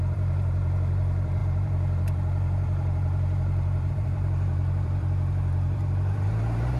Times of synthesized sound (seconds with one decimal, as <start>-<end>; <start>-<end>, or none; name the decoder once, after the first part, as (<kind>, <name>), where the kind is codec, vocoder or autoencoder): 0.0-6.8 (vocoder, BigVGAN v2)